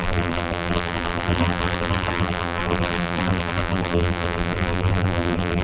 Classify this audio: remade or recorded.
remade